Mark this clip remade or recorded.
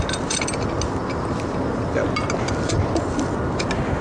recorded